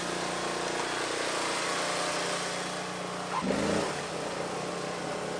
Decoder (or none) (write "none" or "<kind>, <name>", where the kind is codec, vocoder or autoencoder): none